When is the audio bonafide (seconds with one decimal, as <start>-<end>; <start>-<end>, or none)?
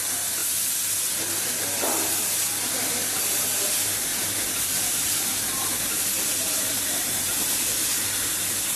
0.4-2.8; 4.1-4.6